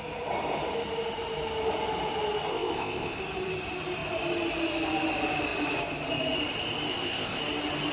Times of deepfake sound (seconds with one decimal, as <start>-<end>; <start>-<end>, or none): 2.5-3.2; 6.9-7.4